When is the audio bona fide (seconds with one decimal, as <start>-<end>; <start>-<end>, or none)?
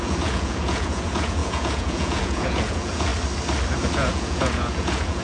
3.1-3.9